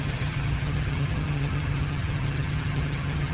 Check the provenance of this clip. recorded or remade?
remade